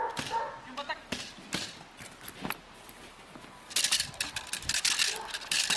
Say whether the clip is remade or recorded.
recorded